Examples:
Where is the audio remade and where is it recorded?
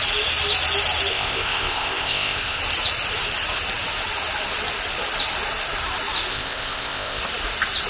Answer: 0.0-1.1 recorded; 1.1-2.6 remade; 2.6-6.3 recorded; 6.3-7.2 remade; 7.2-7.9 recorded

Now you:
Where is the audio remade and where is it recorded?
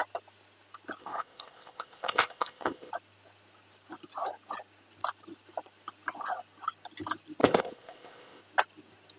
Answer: 0.0-1.0 recorded; 1.0-2.9 remade; 2.9-7.4 recorded; 7.4-8.4 remade; 8.4-9.2 recorded